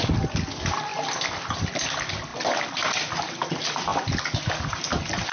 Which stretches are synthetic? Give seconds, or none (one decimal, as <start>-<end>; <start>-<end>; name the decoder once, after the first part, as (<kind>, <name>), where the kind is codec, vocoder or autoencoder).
none